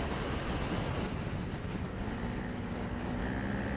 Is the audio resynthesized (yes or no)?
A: no